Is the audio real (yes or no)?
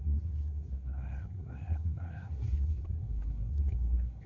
no